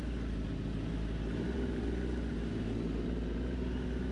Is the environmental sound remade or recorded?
recorded